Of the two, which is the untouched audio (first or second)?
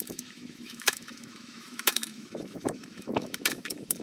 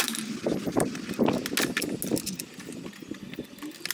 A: second